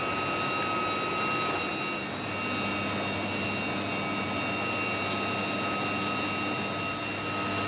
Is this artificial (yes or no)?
no